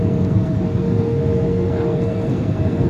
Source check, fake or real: fake